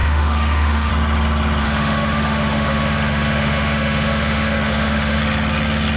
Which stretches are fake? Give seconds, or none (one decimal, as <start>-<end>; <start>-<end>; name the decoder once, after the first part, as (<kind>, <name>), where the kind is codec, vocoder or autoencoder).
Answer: 0.0-0.9 (autoencoder, DAC-VAE); 1.6-5.2